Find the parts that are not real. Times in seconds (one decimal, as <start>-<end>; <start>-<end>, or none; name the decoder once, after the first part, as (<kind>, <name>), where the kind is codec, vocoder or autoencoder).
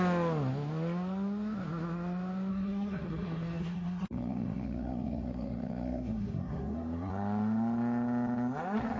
2.5-7.1 (codec, SNAC)